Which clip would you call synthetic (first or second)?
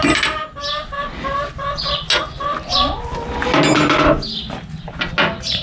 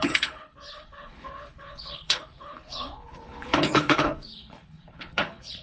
second